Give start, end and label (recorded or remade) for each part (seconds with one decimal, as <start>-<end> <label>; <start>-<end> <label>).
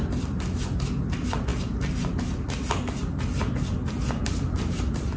0.0-5.2 recorded